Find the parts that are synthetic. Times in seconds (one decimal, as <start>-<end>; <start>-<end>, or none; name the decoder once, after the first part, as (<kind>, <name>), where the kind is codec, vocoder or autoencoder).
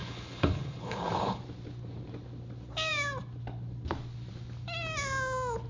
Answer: 0.0-1.4 (codec, HILCodec)